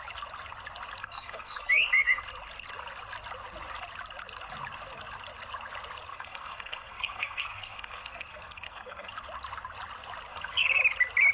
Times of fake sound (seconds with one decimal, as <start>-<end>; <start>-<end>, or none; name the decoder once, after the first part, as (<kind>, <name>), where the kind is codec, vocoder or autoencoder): 1.0-2.2 (codec, SNAC); 6.1-9.1; 10.3-10.8